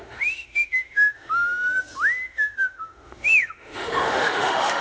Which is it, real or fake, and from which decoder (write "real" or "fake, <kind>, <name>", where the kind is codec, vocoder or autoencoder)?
fake, autoencoder, DAC-VAE